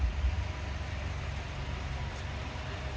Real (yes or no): yes